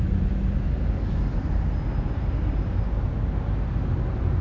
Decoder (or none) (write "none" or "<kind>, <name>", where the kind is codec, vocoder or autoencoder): none